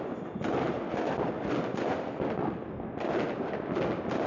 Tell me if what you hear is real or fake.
real